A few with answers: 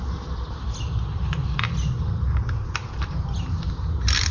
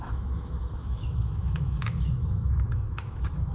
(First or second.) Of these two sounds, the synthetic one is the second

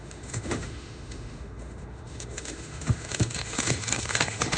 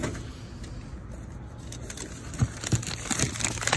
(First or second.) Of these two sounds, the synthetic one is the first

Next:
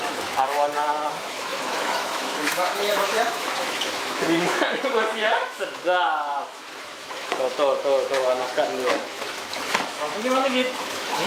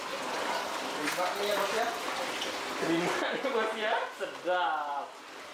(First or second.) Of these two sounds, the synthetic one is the first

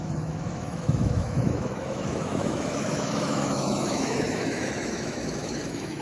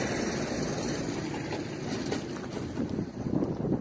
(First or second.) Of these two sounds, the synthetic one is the first